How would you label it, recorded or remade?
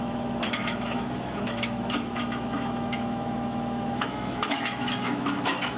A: remade